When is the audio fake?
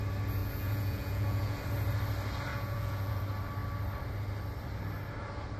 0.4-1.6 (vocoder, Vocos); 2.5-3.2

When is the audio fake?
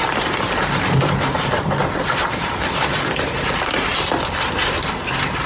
0.0-3.9 (vocoder, BigVGAN v2); 4.5-5.5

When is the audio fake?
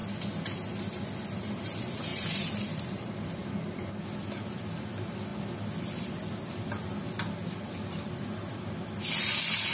2.1-3.5 (vocoder, BigVGAN v2)